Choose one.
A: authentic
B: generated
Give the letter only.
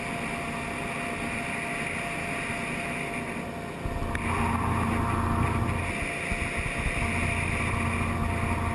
A